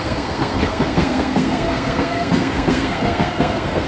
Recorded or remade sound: remade